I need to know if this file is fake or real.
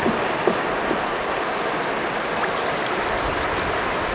real